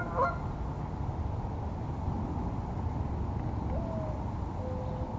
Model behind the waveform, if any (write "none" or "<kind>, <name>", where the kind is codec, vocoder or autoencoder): none